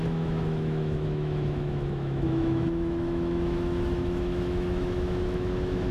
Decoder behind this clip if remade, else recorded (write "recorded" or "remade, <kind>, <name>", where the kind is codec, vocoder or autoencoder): remade, autoencoder, DAC-VAE